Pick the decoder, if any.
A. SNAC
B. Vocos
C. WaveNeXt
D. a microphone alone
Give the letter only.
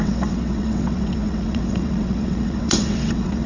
C